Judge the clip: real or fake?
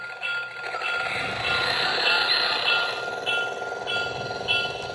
real